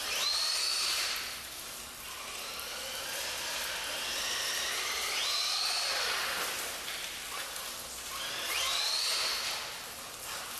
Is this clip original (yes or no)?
yes